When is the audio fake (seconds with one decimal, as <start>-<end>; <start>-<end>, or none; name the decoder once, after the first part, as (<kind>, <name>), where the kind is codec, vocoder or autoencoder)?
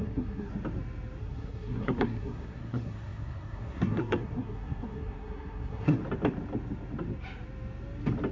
0.0-0.5 (codec, SNAC); 1.2-6.0